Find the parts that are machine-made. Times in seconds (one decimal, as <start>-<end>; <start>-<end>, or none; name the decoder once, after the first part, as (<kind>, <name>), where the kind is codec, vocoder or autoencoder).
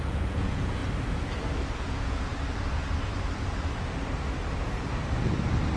0.0-0.8 (vocoder, Vocos); 1.8-2.3